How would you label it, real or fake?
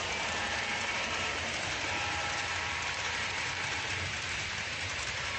fake